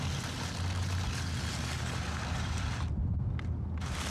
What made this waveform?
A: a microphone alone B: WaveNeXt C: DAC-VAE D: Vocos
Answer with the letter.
A